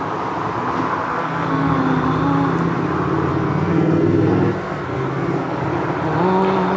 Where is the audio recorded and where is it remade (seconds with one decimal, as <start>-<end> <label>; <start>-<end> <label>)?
0.0-1.1 recorded; 1.1-1.7 remade; 1.7-3.3 recorded; 3.3-5.6 remade; 5.6-6.8 recorded